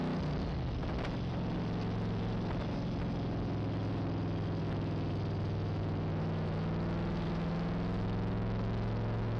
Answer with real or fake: real